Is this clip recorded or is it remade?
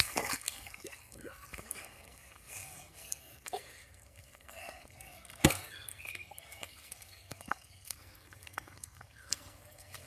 remade